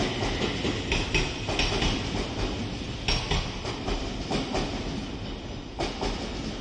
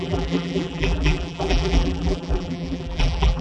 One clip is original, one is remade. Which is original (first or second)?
first